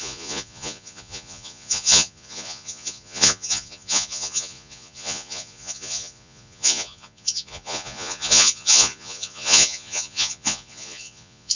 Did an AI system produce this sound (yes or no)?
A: yes